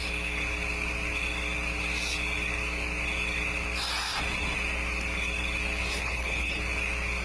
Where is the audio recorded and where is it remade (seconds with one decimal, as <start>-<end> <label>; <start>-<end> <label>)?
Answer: 0.0-5.9 recorded; 5.9-6.6 remade; 6.6-7.2 recorded

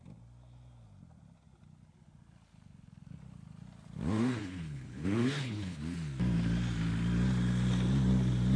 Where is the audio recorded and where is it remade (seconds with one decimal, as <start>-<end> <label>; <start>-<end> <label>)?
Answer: 0.0-4.4 recorded; 4.4-5.8 remade; 5.8-8.6 recorded

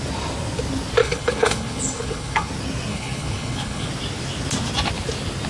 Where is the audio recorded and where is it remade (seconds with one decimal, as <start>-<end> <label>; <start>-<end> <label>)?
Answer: 0.0-1.0 recorded; 1.0-2.5 remade; 2.5-2.9 recorded; 2.9-3.9 remade; 3.9-5.5 recorded

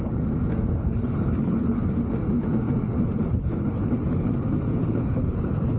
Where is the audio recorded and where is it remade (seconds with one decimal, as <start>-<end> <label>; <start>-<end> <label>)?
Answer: 0.0-0.9 recorded; 0.9-2.1 remade; 2.1-3.4 recorded; 3.4-4.3 remade; 4.3-4.8 recorded; 4.8-5.8 remade

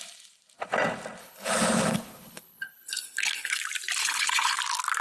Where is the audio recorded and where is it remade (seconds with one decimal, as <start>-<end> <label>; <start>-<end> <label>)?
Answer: 0.0-1.2 recorded; 1.2-3.6 remade; 3.6-4.0 recorded; 4.0-4.6 remade; 4.6-5.0 recorded

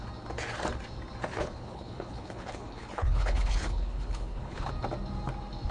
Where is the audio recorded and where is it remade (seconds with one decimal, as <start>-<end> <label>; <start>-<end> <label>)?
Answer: 0.0-1.3 recorded; 1.3-4.7 remade; 4.7-5.7 recorded

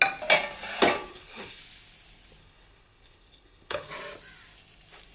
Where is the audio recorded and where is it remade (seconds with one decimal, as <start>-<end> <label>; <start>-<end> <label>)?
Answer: 0.0-1.1 recorded; 1.1-1.6 remade; 1.6-2.4 recorded; 2.4-3.9 remade; 3.9-5.1 recorded

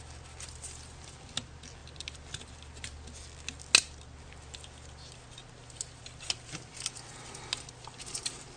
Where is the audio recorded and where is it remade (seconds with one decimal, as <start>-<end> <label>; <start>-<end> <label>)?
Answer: 0.0-8.6 recorded